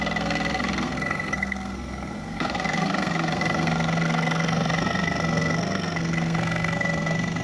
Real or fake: fake